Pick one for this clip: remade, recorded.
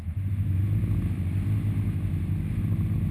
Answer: recorded